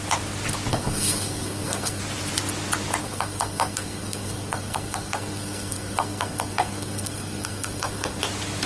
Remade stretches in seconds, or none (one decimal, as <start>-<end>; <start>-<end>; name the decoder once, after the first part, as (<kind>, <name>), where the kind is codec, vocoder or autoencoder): 0.7-2.0 (codec, SNAC); 3.0-8.2